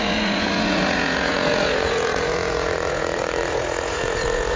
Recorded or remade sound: remade